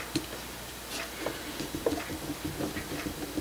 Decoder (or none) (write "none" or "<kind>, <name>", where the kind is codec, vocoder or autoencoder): none